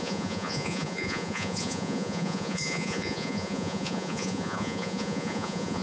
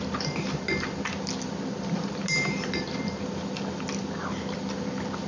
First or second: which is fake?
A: first